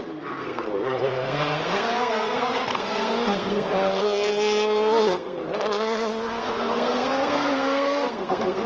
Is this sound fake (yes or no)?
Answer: yes